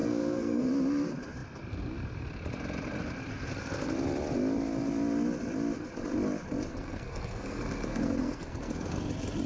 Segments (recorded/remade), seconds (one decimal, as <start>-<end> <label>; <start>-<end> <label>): 0.0-0.7 remade; 0.7-6.7 recorded; 6.7-9.1 remade; 9.1-9.5 recorded